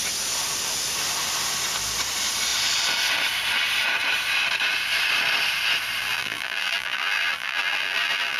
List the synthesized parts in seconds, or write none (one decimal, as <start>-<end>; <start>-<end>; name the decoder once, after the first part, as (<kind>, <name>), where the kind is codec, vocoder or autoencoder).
6.0-8.4 (vocoder, BigVGAN v2)

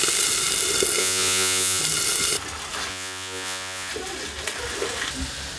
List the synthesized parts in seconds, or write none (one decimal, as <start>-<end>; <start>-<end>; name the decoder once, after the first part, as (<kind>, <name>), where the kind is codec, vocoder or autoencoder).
1.0-1.8 (vocoder, Vocos); 2.9-3.9